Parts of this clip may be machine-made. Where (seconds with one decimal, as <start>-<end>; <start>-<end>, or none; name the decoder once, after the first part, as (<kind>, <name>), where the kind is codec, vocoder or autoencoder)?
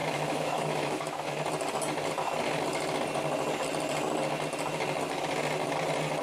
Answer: 0.0-1.3 (autoencoder, DAC-VAE)